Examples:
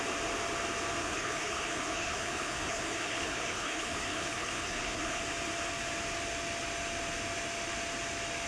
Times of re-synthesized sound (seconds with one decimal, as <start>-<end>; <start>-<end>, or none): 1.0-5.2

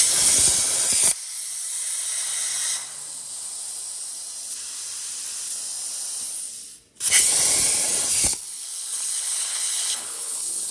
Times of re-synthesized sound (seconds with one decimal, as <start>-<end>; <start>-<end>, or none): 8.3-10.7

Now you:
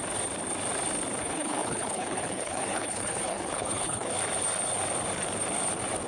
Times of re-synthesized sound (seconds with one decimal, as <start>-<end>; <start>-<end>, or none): 1.2-4.1

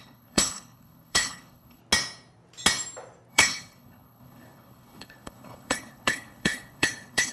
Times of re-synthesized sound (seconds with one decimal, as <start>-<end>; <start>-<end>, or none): 0.0-1.8; 3.3-7.3

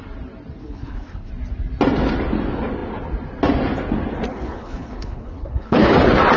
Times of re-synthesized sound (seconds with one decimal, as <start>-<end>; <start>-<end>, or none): 0.6-1.3; 4.3-5.9